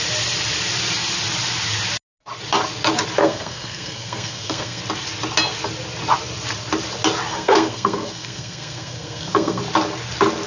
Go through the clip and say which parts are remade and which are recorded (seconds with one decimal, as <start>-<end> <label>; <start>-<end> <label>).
0.0-3.2 recorded; 3.2-4.8 remade; 4.8-7.3 recorded; 7.3-9.6 remade; 9.6-10.5 recorded